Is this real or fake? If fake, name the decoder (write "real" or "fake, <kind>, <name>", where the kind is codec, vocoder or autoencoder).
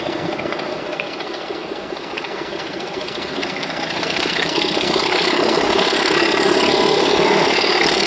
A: fake, codec, SNAC